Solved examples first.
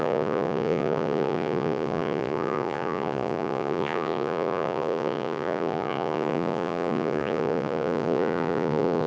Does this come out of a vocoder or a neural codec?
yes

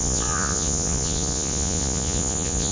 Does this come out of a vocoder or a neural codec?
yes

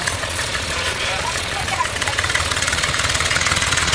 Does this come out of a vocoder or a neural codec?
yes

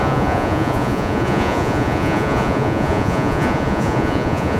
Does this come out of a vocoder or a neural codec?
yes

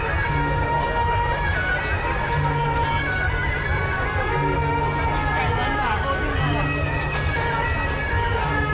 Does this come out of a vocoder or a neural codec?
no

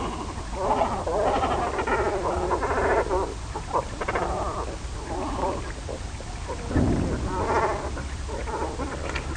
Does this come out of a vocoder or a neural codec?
no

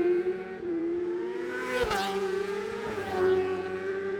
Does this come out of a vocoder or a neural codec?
yes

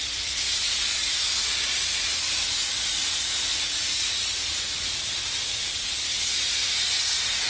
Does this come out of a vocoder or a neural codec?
yes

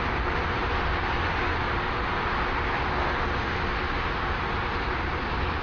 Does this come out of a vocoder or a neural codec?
no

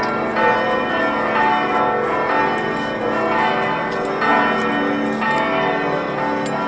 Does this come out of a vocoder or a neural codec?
no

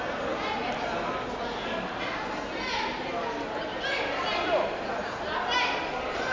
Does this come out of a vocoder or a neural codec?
no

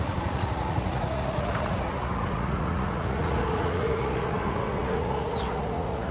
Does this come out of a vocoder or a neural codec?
yes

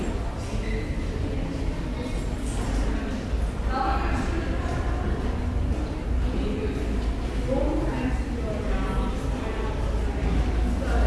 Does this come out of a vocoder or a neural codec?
no